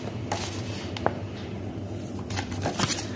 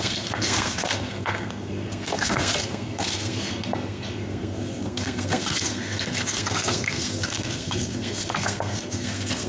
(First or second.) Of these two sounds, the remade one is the second